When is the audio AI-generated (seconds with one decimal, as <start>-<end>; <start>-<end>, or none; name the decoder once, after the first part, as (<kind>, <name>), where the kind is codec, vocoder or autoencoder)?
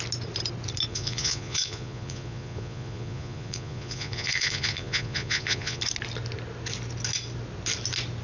0.9-5.8 (vocoder, Vocos)